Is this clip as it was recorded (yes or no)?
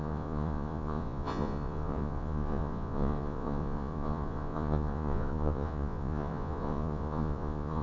no